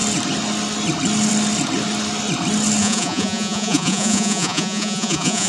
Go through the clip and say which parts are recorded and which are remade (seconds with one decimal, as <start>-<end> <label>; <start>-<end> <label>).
0.0-2.8 recorded; 2.8-5.5 remade